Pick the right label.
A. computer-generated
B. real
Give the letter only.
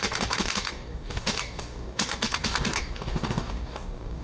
A